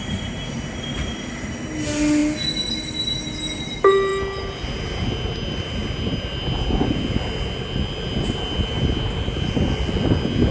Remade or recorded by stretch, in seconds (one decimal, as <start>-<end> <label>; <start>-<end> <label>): 0.0-10.5 recorded